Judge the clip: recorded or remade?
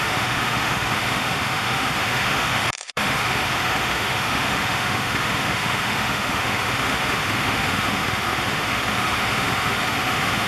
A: remade